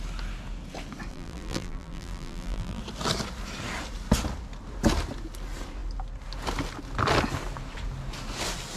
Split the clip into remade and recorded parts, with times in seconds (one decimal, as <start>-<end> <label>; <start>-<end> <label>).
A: 0.0-1.1 recorded; 1.1-2.8 remade; 2.8-8.8 recorded